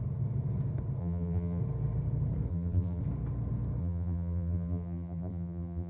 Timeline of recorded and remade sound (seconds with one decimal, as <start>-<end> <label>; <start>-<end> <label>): 0.0-1.0 recorded; 1.0-1.6 remade; 1.6-2.5 recorded; 2.5-3.0 remade; 3.0-3.8 recorded; 3.8-5.9 remade